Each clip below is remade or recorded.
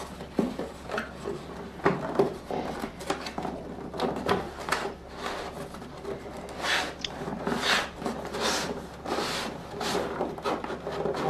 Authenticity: recorded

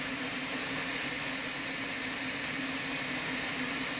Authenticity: recorded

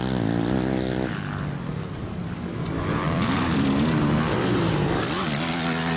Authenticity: recorded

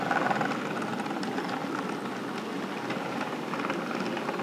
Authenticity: recorded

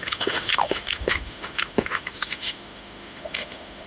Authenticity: remade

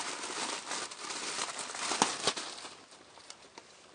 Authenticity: recorded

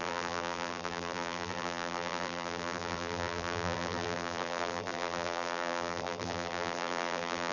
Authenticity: remade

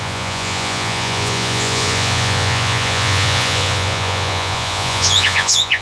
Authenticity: remade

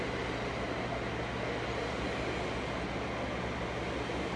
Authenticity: recorded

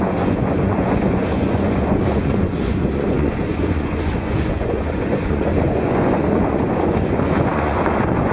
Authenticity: remade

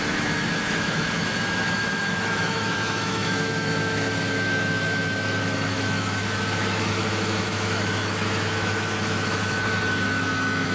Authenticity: remade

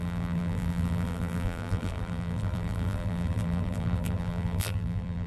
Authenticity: remade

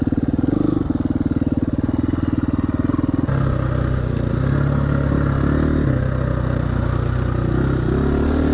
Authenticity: recorded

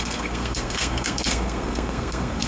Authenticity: remade